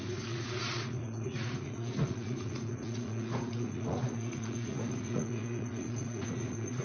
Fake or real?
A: fake